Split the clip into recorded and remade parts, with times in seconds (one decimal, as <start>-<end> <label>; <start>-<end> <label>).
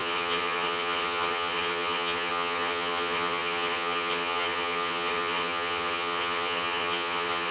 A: 0.0-7.5 remade